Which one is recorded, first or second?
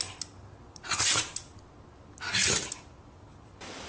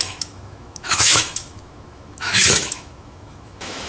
first